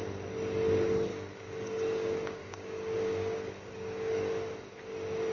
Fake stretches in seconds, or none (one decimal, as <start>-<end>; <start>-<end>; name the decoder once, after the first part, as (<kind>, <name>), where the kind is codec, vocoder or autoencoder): 1.1-4.3 (codec, DAC)